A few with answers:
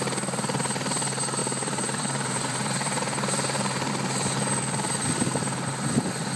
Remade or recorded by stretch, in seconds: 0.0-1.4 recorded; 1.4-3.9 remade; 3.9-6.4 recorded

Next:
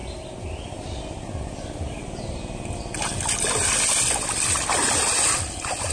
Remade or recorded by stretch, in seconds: 0.0-5.9 recorded

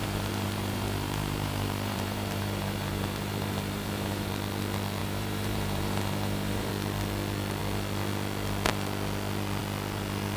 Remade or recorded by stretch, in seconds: 0.0-4.3 remade; 4.3-5.0 recorded; 5.0-6.7 remade; 6.7-10.4 recorded

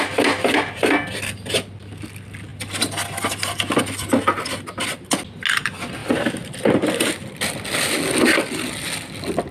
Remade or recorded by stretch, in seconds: 0.0-6.0 recorded; 6.0-7.1 remade; 7.1-9.5 recorded

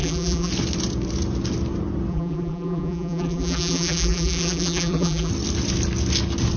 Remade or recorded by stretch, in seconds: 0.0-0.5 remade; 0.5-2.1 recorded; 2.1-5.3 remade; 5.3-6.6 recorded

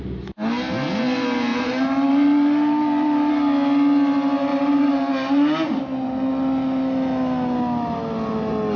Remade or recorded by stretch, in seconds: 0.0-1.5 recorded; 1.5-3.3 remade; 3.3-4.5 recorded; 4.5-5.0 remade; 5.0-8.8 recorded

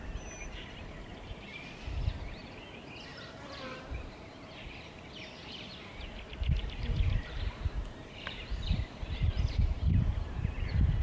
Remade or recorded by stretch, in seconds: 0.0-3.1 recorded; 3.1-5.2 remade; 5.2-6.3 recorded; 6.3-10.5 remade; 10.5-11.0 recorded